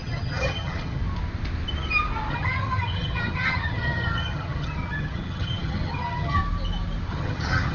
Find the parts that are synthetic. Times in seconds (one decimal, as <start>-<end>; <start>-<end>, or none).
0.0-1.0; 2.3-6.4; 7.1-7.7